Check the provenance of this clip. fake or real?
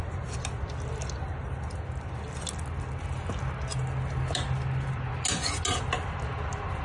real